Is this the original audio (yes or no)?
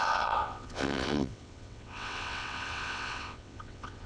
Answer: no